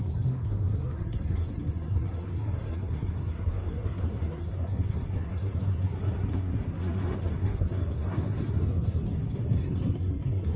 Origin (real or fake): fake